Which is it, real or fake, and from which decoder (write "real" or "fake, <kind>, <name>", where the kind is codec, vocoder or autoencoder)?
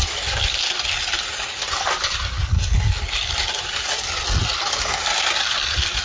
real